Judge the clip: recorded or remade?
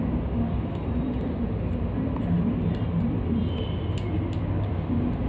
recorded